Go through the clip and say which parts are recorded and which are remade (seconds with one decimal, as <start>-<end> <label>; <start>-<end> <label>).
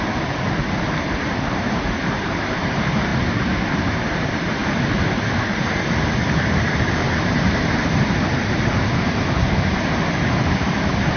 0.0-3.1 remade; 3.1-3.9 recorded; 3.9-11.2 remade